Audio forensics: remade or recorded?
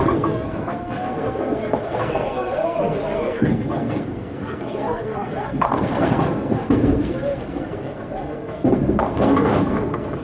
remade